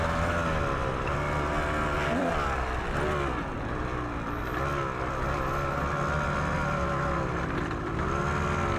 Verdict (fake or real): real